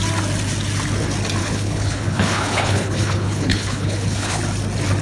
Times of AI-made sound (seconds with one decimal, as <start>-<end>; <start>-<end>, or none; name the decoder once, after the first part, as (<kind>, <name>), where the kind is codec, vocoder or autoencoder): 1.4-4.4 (codec, HILCodec)